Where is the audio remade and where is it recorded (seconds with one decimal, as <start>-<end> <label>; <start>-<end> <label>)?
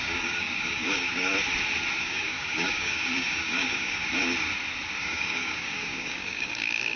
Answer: 0.0-1.3 remade; 1.3-2.0 recorded; 2.0-4.0 remade; 4.0-5.0 recorded; 5.0-7.0 remade